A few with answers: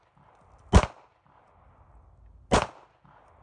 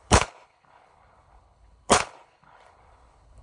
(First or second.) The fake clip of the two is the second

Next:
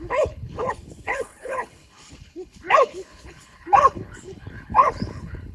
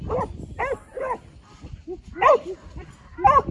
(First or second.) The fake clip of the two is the first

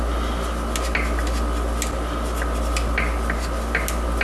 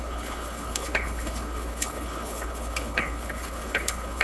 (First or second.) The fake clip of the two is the second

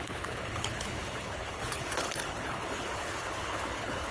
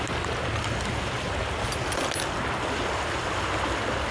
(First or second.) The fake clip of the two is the first